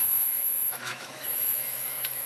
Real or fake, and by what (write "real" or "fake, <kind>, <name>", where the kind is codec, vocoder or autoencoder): fake, autoencoder, DAC-VAE